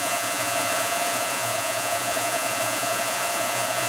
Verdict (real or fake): fake